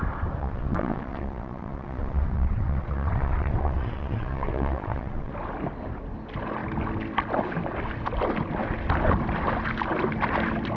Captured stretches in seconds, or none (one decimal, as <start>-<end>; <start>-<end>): 0.0-0.4; 5.3-10.8